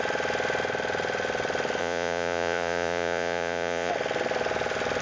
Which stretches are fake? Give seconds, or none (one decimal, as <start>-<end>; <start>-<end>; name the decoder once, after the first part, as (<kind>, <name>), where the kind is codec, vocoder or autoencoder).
1.8-3.9 (vocoder, Vocos)